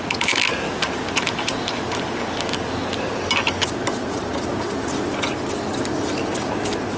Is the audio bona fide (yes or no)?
yes